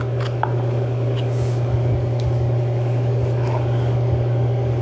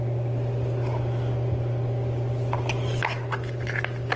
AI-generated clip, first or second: first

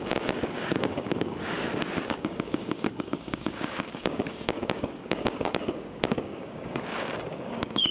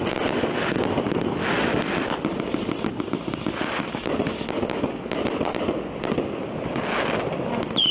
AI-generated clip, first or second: first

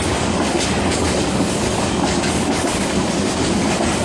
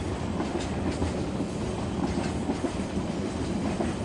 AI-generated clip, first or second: first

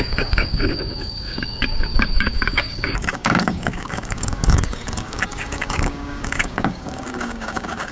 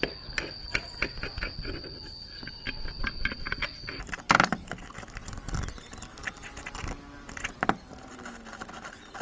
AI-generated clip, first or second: first